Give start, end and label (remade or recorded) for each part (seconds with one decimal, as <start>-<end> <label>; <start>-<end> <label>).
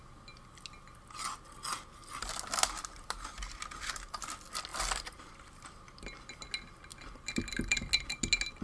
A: 0.0-8.6 recorded